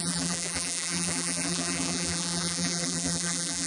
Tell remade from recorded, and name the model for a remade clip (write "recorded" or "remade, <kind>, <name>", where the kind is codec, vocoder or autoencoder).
remade, vocoder, BigVGAN v2